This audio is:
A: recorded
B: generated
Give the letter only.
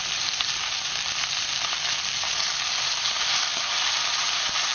B